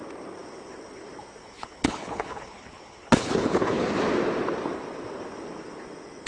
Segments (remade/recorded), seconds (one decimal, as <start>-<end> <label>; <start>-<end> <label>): 0.0-1.4 recorded; 1.4-3.9 remade; 3.9-6.3 recorded

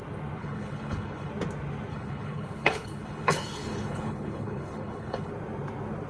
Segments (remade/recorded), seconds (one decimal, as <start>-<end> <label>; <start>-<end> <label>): 0.0-0.4 recorded; 0.4-1.3 remade; 1.3-1.9 recorded; 1.9-5.3 remade; 5.3-6.1 recorded

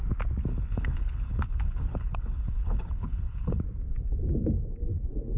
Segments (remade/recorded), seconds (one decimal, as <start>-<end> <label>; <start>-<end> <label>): 0.0-0.4 recorded; 0.4-3.6 remade; 3.6-5.4 recorded

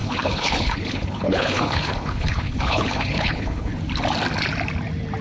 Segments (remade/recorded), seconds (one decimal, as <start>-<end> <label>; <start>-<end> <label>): 0.0-3.7 remade; 3.7-5.2 recorded

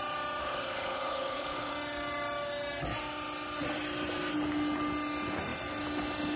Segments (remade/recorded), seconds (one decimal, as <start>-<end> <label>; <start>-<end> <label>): 0.0-0.4 recorded; 0.4-1.7 remade; 1.7-6.4 recorded

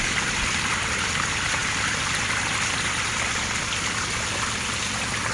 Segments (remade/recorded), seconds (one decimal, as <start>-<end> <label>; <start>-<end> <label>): 0.0-5.3 recorded